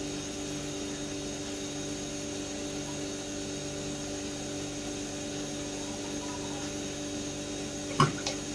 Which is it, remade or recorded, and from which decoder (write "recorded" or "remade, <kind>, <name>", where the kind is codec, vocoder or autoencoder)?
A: recorded